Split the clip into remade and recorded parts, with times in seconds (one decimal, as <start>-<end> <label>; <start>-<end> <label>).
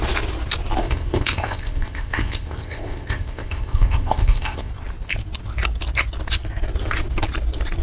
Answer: 0.0-0.8 recorded; 0.8-4.7 remade; 4.7-7.8 recorded